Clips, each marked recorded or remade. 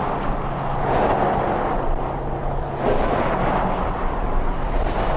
recorded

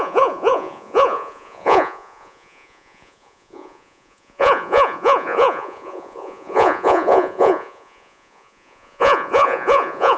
remade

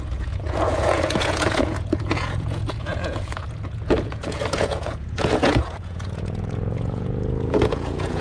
remade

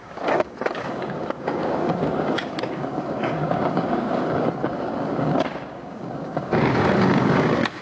remade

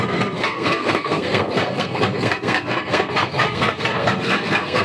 remade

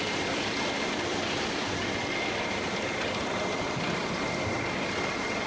remade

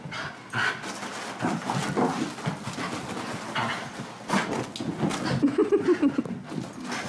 recorded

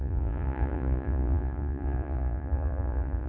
remade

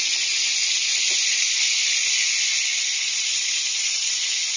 recorded